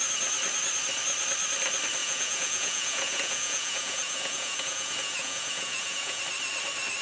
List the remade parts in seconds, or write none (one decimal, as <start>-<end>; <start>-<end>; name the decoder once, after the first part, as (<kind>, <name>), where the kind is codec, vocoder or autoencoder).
2.0-6.2 (vocoder, Vocos)